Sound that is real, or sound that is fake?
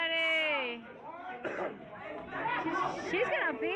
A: real